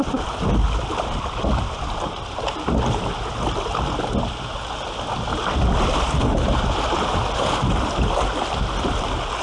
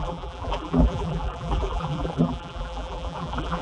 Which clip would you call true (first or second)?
first